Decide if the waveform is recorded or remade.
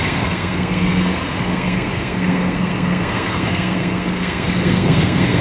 remade